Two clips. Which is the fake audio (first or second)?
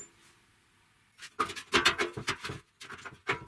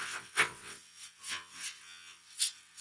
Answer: second